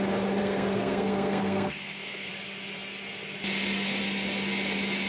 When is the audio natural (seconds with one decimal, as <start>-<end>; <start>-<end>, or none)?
0.0-0.4; 2.3-5.1